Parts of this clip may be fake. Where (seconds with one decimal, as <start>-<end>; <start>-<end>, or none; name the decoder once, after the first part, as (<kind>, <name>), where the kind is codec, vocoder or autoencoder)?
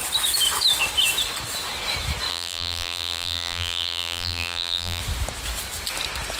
2.3-5.0 (vocoder, BigVGAN v2)